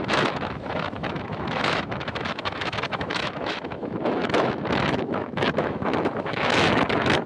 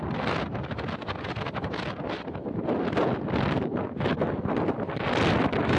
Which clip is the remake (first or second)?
first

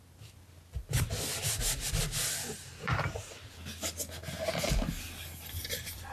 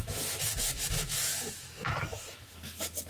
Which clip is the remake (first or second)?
second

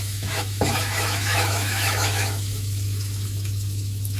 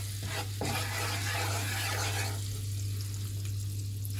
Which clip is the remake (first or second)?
first